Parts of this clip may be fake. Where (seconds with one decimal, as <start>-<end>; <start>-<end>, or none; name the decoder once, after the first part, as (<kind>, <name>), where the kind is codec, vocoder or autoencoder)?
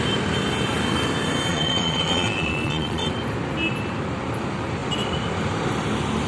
1.5-3.1 (vocoder, Vocos)